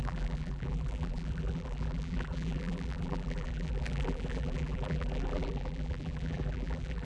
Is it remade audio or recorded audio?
remade